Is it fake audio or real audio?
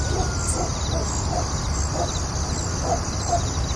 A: real